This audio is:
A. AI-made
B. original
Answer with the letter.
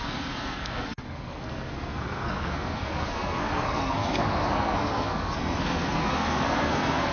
A